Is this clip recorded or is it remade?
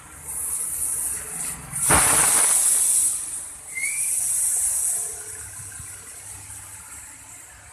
remade